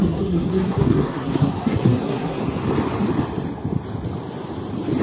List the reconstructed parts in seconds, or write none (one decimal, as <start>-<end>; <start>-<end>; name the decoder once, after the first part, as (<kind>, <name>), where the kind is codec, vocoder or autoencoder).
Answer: 0.0-2.4 (codec, SNAC)